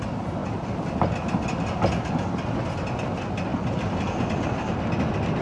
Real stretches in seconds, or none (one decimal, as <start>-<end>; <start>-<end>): 0.0-5.4